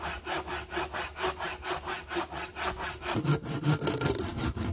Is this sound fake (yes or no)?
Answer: no